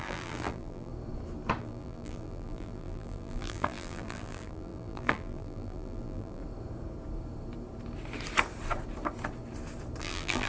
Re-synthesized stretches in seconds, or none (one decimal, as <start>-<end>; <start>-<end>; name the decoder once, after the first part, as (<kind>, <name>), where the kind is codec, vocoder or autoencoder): 0.0-0.9 (vocoder, BigVGAN v2); 1.6-6.4; 10.0-10.5